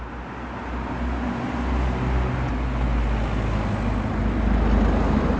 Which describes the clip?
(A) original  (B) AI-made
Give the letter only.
A